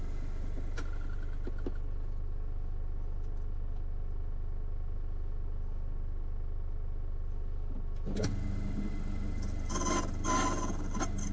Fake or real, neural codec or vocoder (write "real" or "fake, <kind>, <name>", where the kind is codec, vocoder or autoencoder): real